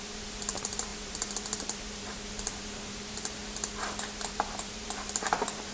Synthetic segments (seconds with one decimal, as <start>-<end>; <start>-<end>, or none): 0.0-3.4; 4.3-5.7